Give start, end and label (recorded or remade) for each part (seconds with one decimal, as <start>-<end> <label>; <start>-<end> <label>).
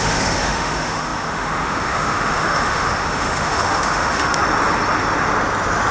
0.0-4.4 remade; 4.4-5.9 recorded